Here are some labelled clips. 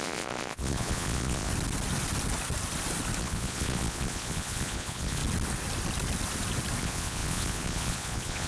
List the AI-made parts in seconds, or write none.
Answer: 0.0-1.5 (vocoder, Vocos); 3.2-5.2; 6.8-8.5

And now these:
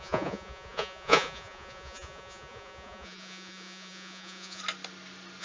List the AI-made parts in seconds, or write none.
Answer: 0.0-4.6 (vocoder, Vocos)